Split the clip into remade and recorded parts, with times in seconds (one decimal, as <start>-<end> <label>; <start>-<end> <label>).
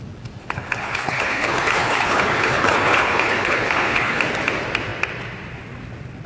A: 0.0-0.4 recorded; 0.4-4.2 remade; 4.2-6.3 recorded